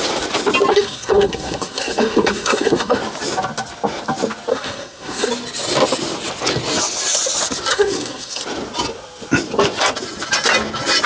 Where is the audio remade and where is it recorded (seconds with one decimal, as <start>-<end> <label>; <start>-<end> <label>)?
0.0-0.7 recorded; 0.7-3.0 remade; 3.0-4.5 recorded; 4.5-5.3 remade; 5.3-7.7 recorded; 7.7-8.4 remade; 8.4-11.1 recorded

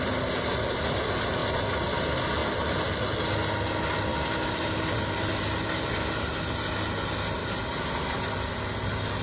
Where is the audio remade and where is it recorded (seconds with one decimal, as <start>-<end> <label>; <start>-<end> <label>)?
0.0-1.4 recorded; 1.4-1.9 remade; 1.9-4.1 recorded; 4.1-5.3 remade; 5.3-7.4 recorded; 7.4-8.6 remade; 8.6-9.2 recorded